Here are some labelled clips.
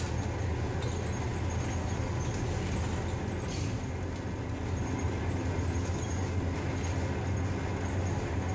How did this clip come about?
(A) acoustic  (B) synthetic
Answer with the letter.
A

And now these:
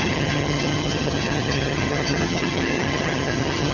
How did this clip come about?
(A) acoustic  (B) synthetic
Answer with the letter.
B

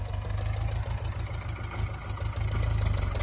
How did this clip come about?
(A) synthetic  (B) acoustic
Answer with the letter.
B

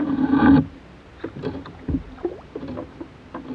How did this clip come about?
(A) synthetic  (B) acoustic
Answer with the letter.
B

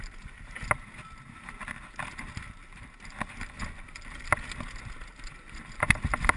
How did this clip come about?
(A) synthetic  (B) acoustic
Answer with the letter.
B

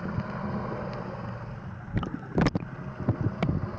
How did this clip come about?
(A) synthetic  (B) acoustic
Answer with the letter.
B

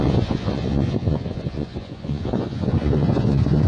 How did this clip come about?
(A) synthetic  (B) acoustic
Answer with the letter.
A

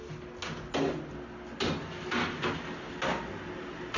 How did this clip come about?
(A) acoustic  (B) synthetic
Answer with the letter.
A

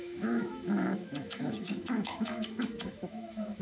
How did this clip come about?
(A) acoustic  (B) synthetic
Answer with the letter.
B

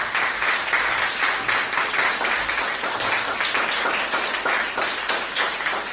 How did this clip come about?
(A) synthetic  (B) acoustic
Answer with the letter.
B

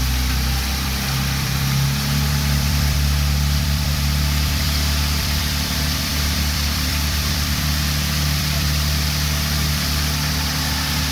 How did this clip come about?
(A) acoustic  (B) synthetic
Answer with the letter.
B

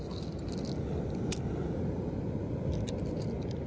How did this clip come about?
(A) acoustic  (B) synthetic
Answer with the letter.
A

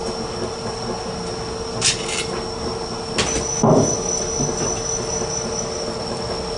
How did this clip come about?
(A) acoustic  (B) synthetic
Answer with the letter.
A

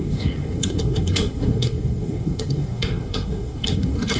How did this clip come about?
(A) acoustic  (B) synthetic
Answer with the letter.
B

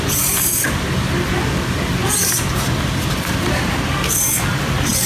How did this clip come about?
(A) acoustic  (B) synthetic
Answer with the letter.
A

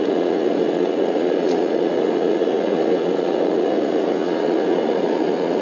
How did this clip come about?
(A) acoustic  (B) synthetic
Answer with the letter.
B